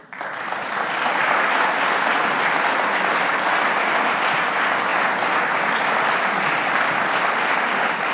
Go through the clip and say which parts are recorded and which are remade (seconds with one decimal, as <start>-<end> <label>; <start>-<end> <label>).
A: 0.0-8.1 recorded